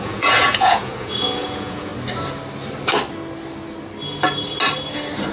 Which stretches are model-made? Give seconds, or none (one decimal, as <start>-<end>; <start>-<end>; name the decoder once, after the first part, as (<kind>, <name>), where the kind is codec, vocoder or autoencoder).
0.0-1.9 (vocoder, Vocos)